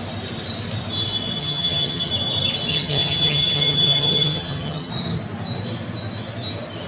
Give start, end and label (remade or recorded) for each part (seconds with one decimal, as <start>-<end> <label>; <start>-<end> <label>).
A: 0.0-1.4 recorded; 1.4-2.1 remade; 2.1-2.7 recorded; 2.7-4.9 remade; 4.9-6.9 recorded